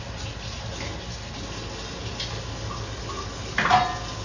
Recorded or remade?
recorded